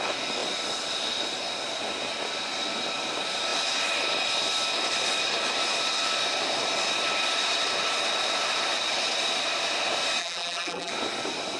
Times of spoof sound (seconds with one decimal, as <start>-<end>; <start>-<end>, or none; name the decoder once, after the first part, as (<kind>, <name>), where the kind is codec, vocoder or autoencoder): 10.2-10.9 (vocoder, BigVGAN v2)